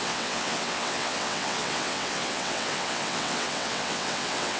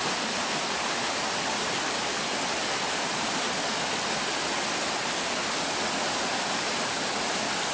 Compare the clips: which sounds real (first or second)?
second